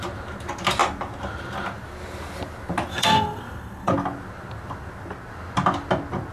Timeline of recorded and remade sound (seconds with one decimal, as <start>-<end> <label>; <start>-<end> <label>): 0.0-2.9 recorded; 2.9-3.9 remade; 3.9-6.3 recorded